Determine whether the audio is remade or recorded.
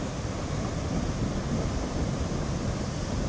recorded